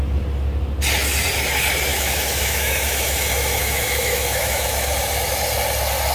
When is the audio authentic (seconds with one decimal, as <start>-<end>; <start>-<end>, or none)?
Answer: 0.0-1.9; 4.9-6.1